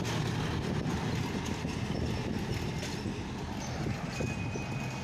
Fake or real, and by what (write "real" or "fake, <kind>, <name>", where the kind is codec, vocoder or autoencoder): real